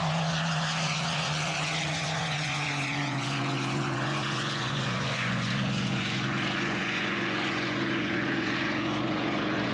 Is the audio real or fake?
fake